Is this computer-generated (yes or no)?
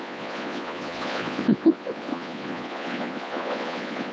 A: yes